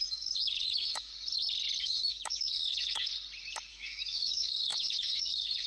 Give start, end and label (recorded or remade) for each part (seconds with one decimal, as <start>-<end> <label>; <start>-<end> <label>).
0.0-1.1 remade; 1.1-1.8 recorded; 1.8-3.1 remade; 3.1-3.7 recorded; 3.7-5.7 remade